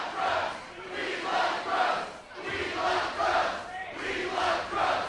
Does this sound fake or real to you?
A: fake